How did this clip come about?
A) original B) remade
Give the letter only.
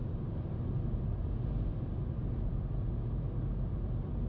A